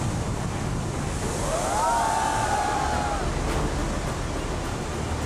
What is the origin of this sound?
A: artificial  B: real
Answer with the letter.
B